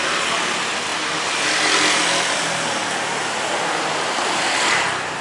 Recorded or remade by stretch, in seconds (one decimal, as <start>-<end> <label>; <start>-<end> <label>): 0.0-5.2 recorded